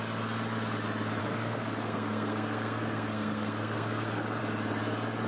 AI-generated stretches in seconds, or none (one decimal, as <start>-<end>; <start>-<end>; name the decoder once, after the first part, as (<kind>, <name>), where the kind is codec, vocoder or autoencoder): 1.2-4.4 (codec, SNAC)